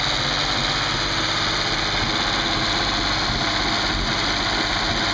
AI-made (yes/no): no